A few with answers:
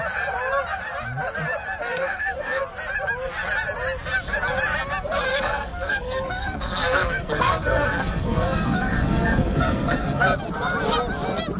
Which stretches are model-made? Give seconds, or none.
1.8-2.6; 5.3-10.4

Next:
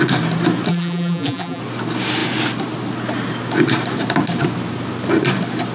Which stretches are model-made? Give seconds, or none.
0.7-1.6